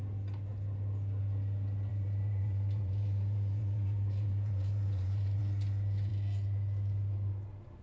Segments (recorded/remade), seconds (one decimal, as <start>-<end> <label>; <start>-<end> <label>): 0.0-1.9 recorded; 1.9-5.4 remade; 5.4-7.8 recorded